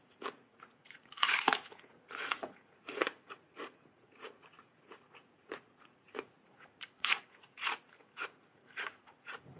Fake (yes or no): yes